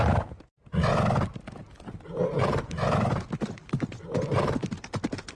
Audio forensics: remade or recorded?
recorded